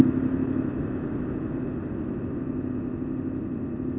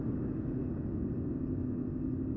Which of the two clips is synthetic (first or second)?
second